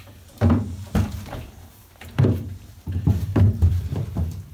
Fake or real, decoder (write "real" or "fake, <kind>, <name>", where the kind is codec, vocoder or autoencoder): fake, vocoder, BigVGAN v2